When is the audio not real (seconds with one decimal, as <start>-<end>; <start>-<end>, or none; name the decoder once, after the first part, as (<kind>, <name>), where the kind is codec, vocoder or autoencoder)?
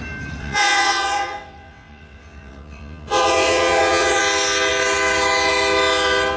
0.4-4.2 (vocoder, WaveNeXt)